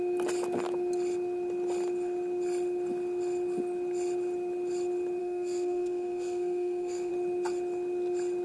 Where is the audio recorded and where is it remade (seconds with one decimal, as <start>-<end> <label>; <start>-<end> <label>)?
0.0-5.2 recorded; 5.2-7.1 remade; 7.1-8.4 recorded